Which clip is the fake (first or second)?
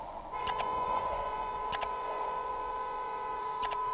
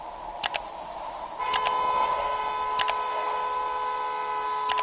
first